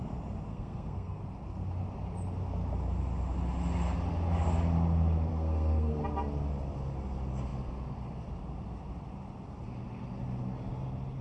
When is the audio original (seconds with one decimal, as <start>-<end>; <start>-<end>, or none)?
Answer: 0.0-0.5; 1.2-5.3; 6.0-11.2